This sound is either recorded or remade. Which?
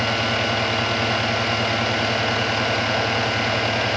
recorded